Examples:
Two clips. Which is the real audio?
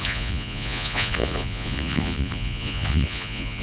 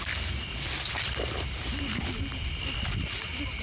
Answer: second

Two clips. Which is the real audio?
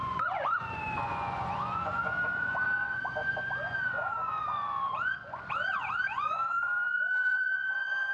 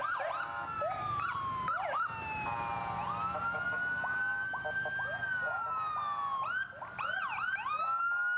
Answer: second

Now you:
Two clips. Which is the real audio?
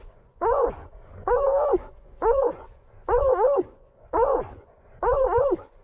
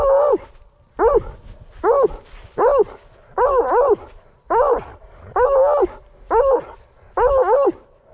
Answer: second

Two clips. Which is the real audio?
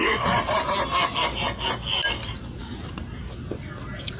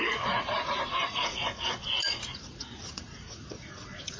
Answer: first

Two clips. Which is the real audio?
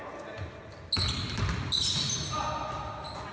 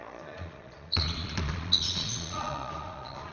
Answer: first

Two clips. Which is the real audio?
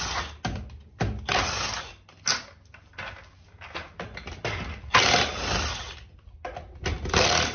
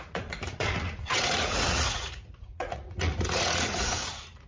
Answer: first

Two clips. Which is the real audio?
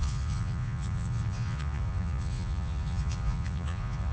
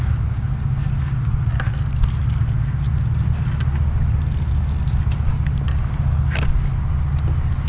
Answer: second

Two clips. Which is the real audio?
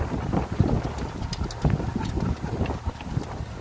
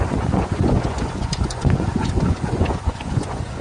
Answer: first